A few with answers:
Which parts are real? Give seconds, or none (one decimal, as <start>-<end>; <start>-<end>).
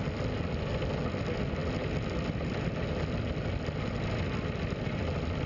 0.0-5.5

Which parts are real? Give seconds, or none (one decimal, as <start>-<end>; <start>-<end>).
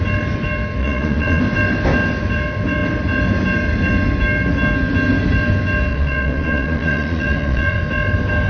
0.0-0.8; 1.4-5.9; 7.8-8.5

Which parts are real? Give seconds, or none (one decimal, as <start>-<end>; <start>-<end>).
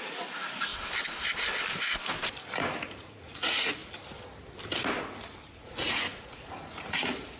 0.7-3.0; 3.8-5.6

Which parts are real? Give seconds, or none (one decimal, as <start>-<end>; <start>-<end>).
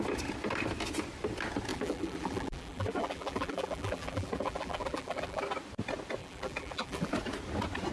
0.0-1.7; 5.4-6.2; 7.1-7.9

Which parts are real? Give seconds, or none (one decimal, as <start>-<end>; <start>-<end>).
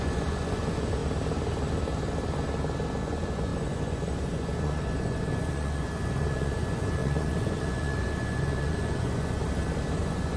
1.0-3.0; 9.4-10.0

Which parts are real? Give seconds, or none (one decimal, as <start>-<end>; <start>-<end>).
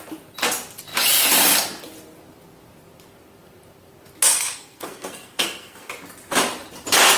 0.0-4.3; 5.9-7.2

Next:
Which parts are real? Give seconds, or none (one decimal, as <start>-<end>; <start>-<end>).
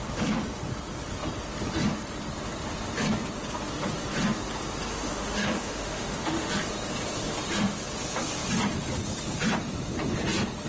0.0-4.9; 6.5-10.7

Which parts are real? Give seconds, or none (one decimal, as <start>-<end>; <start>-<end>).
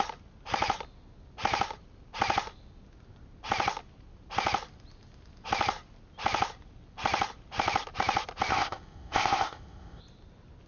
0.0-8.5; 10.0-10.7